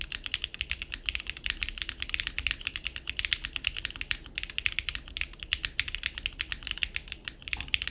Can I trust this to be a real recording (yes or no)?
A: yes